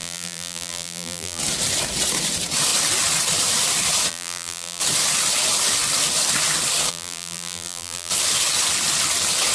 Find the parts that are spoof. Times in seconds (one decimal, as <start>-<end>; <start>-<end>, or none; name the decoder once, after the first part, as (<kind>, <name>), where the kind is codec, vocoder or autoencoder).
0.0-1.4 (vocoder, BigVGAN v2); 4.1-4.8; 6.9-8.1